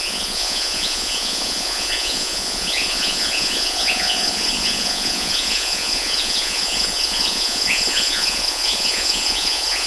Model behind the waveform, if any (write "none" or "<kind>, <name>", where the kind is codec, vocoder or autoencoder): vocoder, Vocos